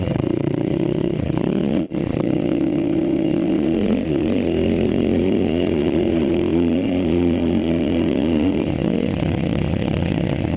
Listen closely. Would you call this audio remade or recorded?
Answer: remade